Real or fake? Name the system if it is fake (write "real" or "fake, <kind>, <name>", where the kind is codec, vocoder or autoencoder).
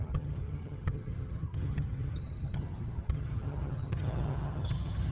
fake, vocoder, HiFi-GAN